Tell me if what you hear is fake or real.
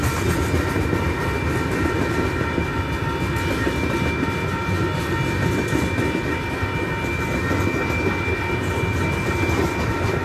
real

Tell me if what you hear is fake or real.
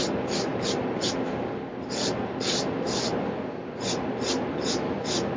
real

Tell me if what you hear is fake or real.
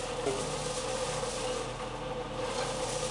real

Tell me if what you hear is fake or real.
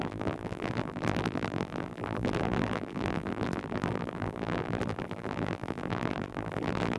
fake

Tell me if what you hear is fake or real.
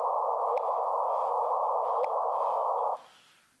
real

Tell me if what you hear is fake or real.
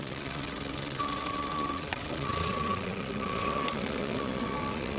fake